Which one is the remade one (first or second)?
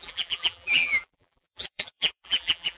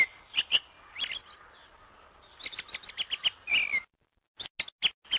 first